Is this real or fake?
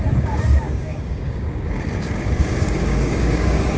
fake